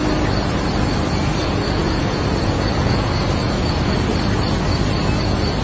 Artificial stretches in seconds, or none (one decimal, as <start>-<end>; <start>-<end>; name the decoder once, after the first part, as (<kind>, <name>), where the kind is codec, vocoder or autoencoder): 1.4-4.1 (vocoder, Vocos)